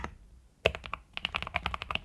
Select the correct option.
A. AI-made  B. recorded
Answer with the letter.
B